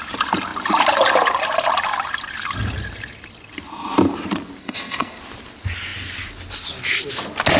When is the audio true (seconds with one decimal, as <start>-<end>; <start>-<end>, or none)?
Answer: 0.0-4.6; 5.2-7.6